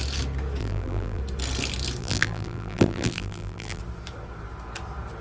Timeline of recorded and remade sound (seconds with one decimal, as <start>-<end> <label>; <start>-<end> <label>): 0.0-0.6 recorded; 0.6-1.2 remade; 1.2-2.0 recorded; 2.0-3.8 remade; 3.8-5.2 recorded